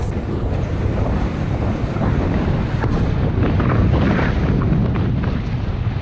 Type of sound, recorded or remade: recorded